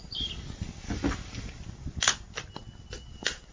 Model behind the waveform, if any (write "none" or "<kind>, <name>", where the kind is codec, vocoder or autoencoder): none